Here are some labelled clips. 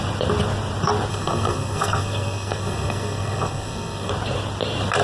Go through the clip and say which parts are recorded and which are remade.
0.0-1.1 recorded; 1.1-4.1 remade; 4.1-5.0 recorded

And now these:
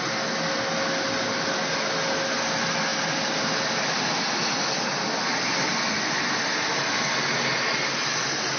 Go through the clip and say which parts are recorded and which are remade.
0.0-8.6 recorded

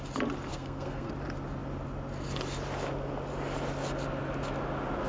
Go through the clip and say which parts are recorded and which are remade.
0.0-0.5 recorded; 0.5-1.1 remade; 1.1-5.1 recorded

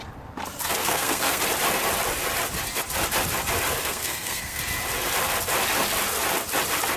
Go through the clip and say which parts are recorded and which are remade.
0.0-0.8 recorded; 0.8-1.4 remade; 1.4-3.8 recorded; 3.8-4.6 remade; 4.6-7.0 recorded

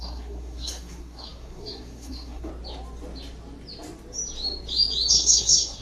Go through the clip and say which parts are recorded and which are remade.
0.0-2.5 remade; 2.5-5.1 recorded; 5.1-5.8 remade

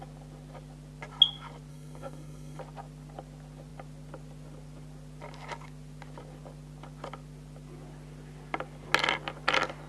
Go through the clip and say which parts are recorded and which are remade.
0.0-1.7 recorded; 1.7-2.6 remade; 2.6-9.9 recorded

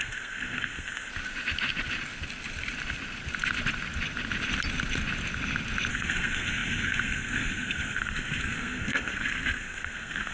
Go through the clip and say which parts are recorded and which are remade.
0.0-1.1 remade; 1.1-5.9 recorded; 5.9-10.3 remade

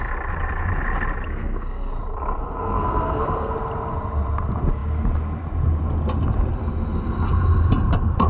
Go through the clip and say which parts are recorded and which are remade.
0.0-1.3 recorded; 1.3-1.9 remade; 1.9-2.4 recorded; 2.4-3.5 remade; 3.5-8.3 recorded